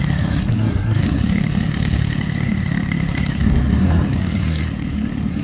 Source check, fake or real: fake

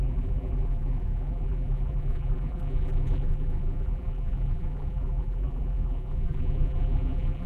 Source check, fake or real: fake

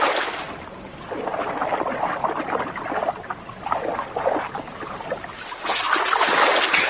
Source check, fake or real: real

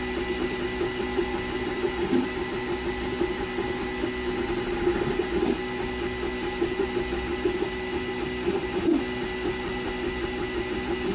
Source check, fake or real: real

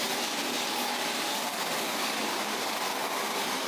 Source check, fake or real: fake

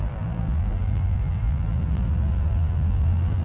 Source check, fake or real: fake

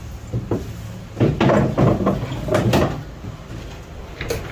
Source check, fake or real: real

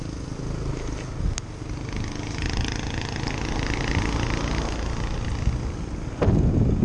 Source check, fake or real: real